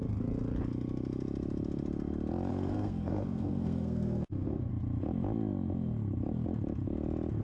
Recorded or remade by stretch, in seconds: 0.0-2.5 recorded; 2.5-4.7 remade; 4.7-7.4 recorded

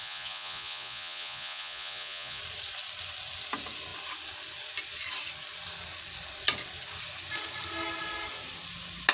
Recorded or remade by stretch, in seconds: 0.0-2.4 remade; 2.4-9.1 recorded

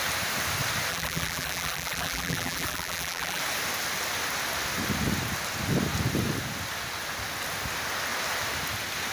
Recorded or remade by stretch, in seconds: 0.0-0.9 recorded; 0.9-3.4 remade; 3.4-9.1 recorded

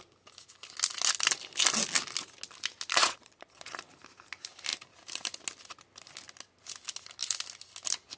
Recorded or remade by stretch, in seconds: 0.0-3.0 recorded; 3.0-3.8 remade; 3.8-8.2 recorded